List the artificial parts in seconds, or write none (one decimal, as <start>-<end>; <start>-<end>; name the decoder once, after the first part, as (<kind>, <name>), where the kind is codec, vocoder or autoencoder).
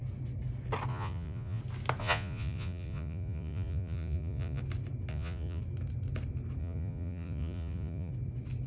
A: 0.9-1.6 (vocoder, Vocos); 2.0-4.6; 5.1-5.6; 6.6-8.1